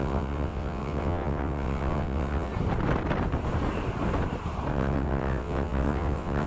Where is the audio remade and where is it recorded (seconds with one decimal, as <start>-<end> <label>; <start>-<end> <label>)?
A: 0.0-2.5 remade; 2.5-4.7 recorded; 4.7-6.5 remade